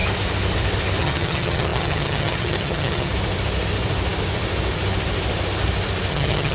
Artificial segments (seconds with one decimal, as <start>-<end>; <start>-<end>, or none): 1.0-3.1; 6.1-6.5